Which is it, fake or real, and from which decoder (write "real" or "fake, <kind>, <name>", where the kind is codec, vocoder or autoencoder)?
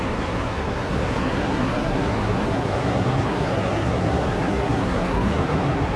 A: fake, codec, SNAC